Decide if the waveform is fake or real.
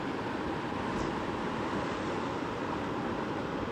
fake